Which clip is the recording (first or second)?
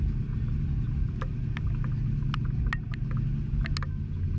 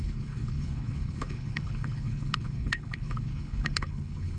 first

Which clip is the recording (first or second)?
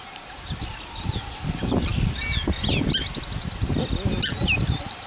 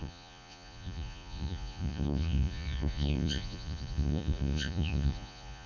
first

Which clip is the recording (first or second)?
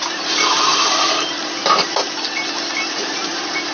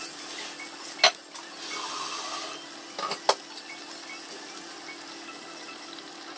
second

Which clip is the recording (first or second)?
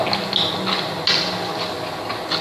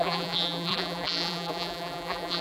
first